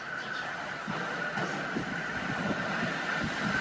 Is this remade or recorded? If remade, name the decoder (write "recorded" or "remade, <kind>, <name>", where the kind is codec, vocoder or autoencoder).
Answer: recorded